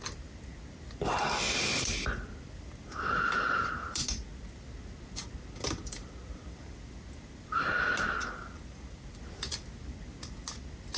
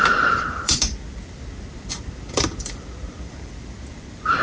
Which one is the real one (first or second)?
first